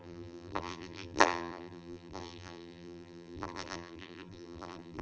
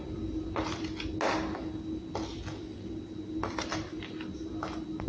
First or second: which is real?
second